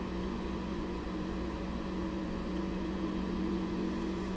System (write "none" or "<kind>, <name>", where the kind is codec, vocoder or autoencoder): vocoder, Vocos